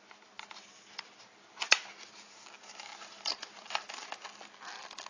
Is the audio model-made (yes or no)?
no